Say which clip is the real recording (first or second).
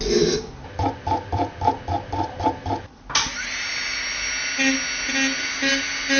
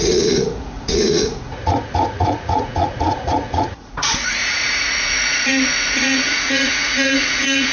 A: first